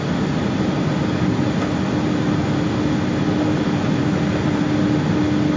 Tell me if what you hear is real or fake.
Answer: real